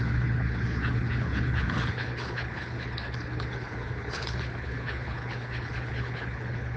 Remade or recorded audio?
remade